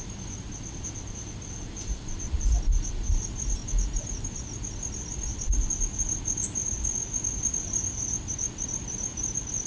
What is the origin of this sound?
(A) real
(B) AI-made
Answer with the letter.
A